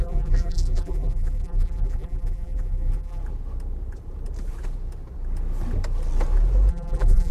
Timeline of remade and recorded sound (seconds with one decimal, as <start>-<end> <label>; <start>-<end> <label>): 0.0-3.2 remade; 3.2-6.7 recorded; 6.7-7.3 remade

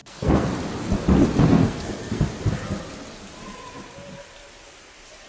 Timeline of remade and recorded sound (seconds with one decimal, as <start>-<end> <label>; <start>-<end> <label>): 0.0-0.5 remade; 0.5-1.5 recorded; 1.5-2.3 remade; 2.3-5.3 recorded

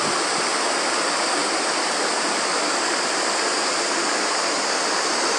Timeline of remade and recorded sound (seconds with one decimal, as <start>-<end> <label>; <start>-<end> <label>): 0.0-5.4 recorded